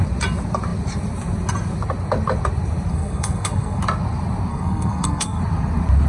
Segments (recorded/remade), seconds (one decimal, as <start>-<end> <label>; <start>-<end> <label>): 0.0-2.9 recorded; 2.9-3.8 remade; 3.8-4.5 recorded; 4.5-5.4 remade; 5.4-6.1 recorded